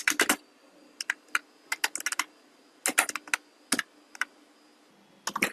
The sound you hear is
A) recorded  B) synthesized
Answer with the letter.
A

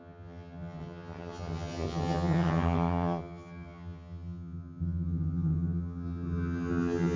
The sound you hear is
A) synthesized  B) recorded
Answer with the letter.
A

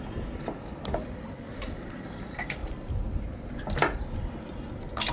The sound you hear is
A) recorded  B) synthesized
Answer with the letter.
A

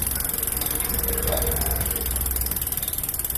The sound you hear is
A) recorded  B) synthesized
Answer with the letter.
A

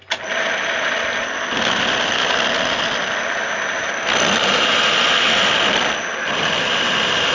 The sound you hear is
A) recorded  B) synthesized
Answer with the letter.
A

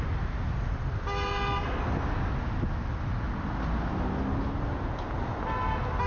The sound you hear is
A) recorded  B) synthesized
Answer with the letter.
A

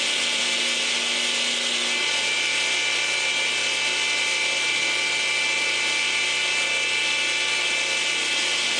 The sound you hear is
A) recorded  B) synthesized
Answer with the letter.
A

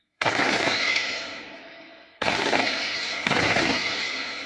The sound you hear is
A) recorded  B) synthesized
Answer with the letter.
B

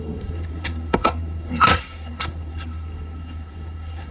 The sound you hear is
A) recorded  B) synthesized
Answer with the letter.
B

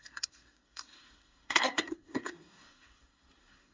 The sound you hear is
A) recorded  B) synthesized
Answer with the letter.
B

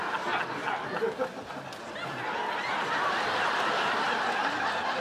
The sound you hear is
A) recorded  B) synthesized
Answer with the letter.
A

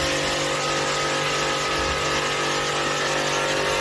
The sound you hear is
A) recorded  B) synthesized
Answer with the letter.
A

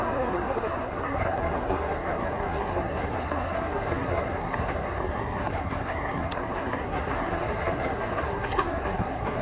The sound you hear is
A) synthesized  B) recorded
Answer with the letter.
A